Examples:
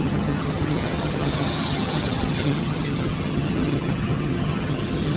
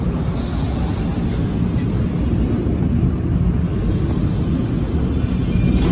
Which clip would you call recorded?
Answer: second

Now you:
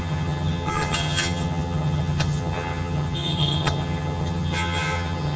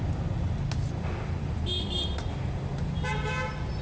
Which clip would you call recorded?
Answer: second